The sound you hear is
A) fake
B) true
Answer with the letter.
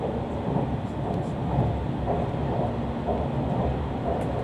B